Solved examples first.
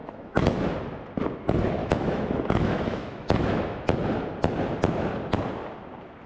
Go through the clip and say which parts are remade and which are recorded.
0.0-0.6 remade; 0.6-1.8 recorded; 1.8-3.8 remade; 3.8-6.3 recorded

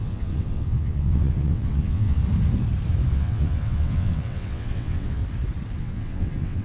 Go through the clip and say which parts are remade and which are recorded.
0.0-2.2 remade; 2.2-3.1 recorded; 3.1-5.2 remade; 5.2-5.8 recorded; 5.8-6.6 remade

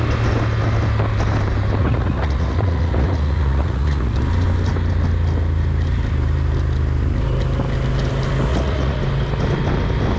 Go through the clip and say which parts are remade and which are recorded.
0.0-1.8 recorded; 1.8-4.1 remade; 4.1-8.5 recorded; 8.5-9.0 remade; 9.0-10.2 recorded